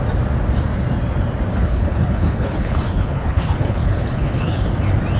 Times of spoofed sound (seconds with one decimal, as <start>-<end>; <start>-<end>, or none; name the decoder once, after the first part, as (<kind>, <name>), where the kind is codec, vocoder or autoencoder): 1.5-4.6 (codec, HILCodec)